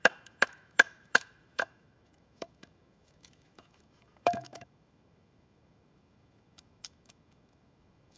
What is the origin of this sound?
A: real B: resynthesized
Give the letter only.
B